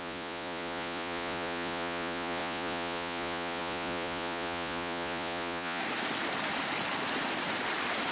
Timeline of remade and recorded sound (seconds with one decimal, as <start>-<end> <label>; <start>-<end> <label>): 0.0-5.8 remade; 5.8-8.1 recorded